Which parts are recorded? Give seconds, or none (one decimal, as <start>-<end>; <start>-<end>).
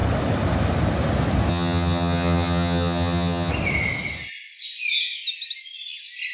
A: 0.0-1.5; 3.5-6.3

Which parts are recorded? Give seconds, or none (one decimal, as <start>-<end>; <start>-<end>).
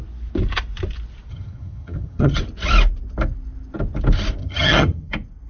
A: 0.0-1.3; 2.4-4.4; 5.1-5.5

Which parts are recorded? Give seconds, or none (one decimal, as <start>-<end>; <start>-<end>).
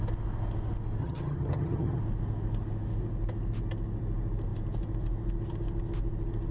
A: 0.0-1.0; 2.0-6.5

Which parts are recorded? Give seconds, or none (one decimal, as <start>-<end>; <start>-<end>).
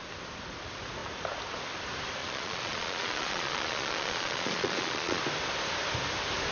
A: 0.0-2.2; 5.2-6.5